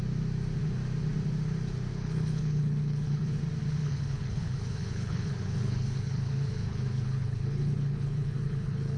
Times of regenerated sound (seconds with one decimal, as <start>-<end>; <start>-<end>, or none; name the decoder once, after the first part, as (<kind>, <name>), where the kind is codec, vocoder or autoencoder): 1.9-3.4 (codec, HILCodec); 3.8-9.0